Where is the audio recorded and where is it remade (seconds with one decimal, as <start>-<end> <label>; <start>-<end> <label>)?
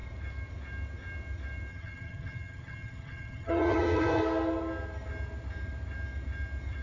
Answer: 0.0-1.7 recorded; 1.7-4.2 remade; 4.2-6.8 recorded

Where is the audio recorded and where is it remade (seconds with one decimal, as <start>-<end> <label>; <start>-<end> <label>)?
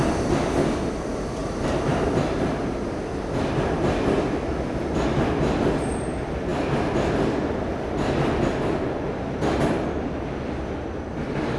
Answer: 0.0-1.4 recorded; 1.4-2.9 remade; 2.9-11.6 recorded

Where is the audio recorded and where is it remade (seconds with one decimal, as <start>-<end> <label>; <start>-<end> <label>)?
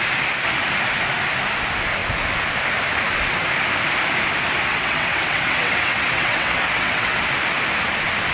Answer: 0.0-4.7 recorded; 4.7-7.2 remade; 7.2-8.3 recorded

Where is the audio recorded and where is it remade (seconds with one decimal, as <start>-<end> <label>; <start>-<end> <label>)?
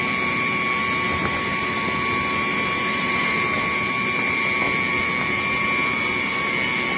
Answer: 0.0-7.0 recorded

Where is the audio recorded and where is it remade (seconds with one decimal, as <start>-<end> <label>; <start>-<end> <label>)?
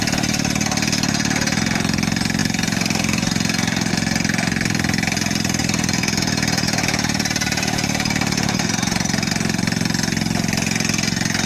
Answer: 0.0-2.4 recorded; 2.4-3.9 remade; 3.9-5.6 recorded; 5.6-9.3 remade; 9.3-11.5 recorded